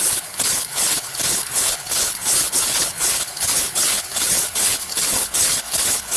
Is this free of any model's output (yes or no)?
no